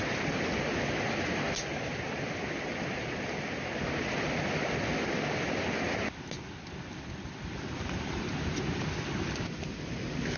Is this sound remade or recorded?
recorded